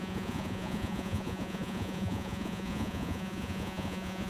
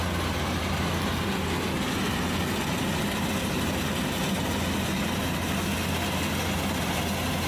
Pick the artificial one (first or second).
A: first